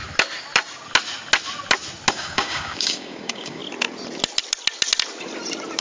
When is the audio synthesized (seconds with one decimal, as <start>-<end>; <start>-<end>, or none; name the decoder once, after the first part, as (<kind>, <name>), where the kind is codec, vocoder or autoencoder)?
2.1-3.6 (codec, DAC)